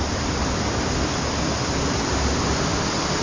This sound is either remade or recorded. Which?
recorded